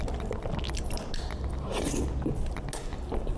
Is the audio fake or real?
real